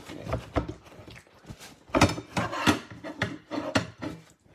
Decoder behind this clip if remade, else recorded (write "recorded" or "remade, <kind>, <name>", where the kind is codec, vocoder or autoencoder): recorded